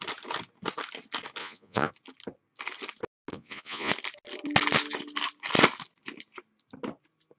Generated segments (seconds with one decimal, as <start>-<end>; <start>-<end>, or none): 1.4-1.9; 3.3-3.9